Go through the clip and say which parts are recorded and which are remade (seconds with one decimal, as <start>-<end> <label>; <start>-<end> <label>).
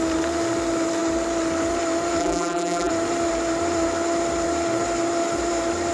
0.0-2.2 recorded; 2.2-2.9 remade; 2.9-5.9 recorded